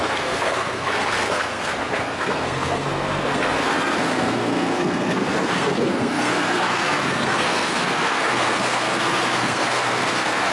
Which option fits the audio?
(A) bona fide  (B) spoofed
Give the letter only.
B